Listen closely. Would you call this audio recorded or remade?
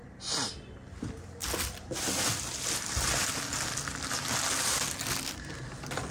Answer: recorded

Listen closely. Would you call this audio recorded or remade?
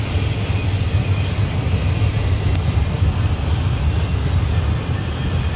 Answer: recorded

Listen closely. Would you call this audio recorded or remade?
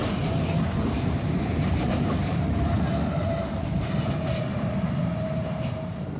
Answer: remade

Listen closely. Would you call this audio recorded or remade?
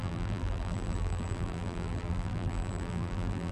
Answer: remade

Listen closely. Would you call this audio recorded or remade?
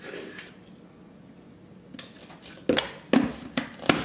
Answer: recorded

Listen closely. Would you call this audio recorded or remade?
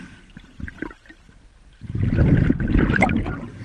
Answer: remade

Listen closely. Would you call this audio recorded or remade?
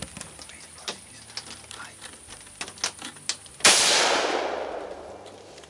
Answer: recorded